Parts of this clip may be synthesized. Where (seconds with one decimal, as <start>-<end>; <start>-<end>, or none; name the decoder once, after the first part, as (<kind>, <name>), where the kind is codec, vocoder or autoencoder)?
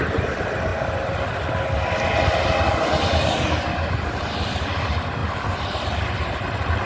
5.2-6.0 (vocoder, BigVGAN v2)